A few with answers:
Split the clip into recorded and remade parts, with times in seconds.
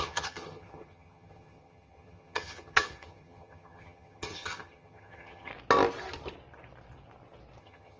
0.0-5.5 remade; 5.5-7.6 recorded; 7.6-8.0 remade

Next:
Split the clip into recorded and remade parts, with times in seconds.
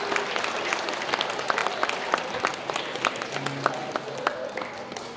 0.0-5.2 recorded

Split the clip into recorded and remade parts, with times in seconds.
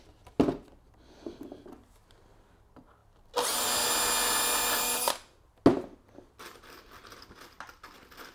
0.0-8.3 recorded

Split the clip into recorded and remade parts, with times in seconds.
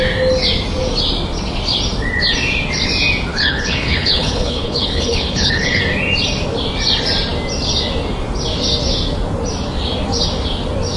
0.0-3.3 recorded; 3.3-5.8 remade; 5.8-11.0 recorded